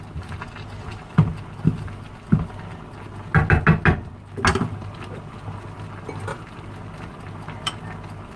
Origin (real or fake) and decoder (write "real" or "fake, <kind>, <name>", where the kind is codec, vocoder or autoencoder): real